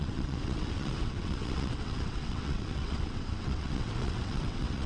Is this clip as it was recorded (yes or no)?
no